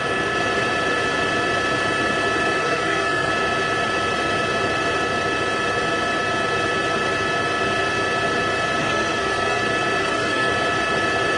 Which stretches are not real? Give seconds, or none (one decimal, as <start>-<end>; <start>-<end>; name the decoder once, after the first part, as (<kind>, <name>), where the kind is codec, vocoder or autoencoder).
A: 2.6-3.3 (codec, SNAC); 8.8-9.6; 10.0-10.5